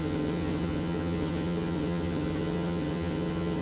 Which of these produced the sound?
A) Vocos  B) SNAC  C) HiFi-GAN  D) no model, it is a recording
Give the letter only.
C